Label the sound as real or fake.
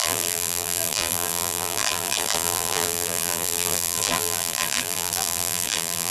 fake